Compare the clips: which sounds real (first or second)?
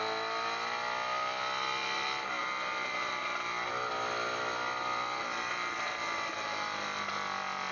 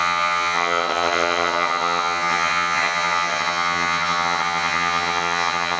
first